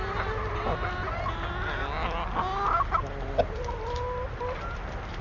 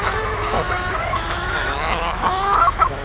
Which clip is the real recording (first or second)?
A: first